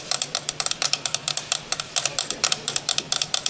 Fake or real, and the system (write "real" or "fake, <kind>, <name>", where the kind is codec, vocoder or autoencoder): fake, vocoder, BigVGAN v2